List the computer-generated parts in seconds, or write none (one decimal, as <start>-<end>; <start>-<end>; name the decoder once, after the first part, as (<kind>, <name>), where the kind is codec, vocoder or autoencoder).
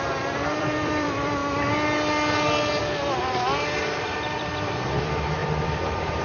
0.0-1.4 (vocoder, BigVGAN v2); 2.8-6.2